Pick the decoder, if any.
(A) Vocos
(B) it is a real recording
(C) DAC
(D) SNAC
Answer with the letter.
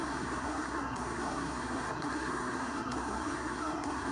D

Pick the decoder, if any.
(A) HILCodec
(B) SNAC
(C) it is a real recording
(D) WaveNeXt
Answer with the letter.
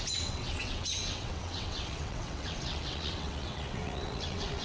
D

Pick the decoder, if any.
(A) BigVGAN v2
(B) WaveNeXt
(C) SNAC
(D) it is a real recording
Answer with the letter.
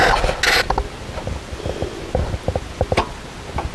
D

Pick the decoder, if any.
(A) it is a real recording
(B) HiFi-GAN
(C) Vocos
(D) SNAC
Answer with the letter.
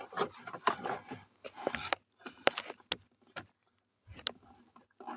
A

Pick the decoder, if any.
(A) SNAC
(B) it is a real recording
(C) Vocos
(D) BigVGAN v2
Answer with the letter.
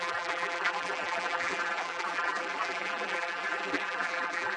D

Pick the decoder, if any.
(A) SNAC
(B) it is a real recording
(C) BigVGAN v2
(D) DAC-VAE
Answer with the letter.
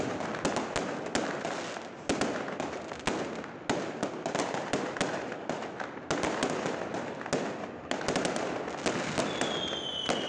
B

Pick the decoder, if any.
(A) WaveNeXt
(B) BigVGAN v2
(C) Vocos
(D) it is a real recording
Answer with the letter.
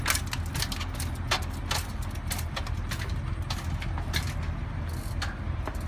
D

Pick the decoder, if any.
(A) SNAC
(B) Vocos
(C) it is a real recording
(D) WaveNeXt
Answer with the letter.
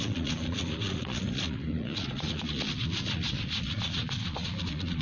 B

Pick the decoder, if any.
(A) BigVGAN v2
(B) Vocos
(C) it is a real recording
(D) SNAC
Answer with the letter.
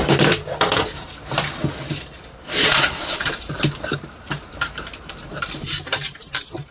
A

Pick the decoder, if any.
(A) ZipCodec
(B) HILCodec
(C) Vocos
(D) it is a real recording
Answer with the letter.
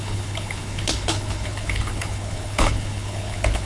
B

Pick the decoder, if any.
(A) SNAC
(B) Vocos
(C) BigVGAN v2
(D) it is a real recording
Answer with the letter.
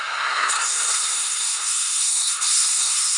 A